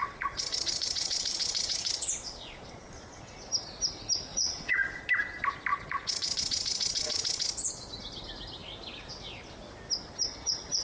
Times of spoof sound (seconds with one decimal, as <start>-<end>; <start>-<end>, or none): 0.0-3.3; 4.3-5.0; 5.7-7.7